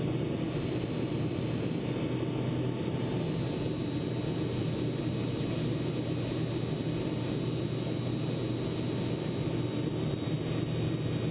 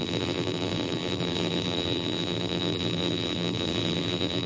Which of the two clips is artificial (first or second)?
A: second